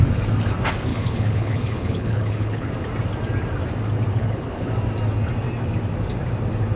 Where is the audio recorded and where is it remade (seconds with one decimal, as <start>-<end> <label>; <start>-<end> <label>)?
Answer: 0.0-0.9 recorded; 0.9-2.7 remade; 2.7-4.1 recorded; 4.1-4.7 remade; 4.7-6.8 recorded